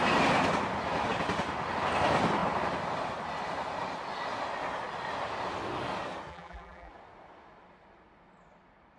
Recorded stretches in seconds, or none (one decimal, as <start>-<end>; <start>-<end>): 0.0-6.3; 6.9-9.0